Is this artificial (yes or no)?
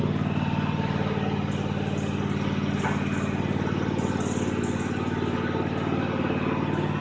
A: no